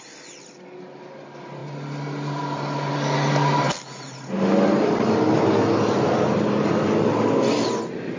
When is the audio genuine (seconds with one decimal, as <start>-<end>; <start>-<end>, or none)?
0.0-8.2